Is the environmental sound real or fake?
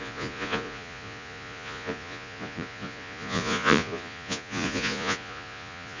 fake